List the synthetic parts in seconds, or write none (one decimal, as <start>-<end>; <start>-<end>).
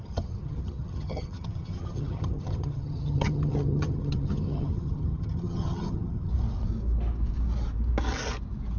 0.0-6.3